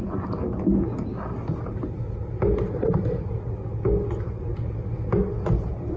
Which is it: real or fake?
real